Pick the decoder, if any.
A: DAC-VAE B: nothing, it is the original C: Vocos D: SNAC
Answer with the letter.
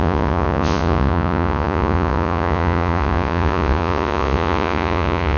C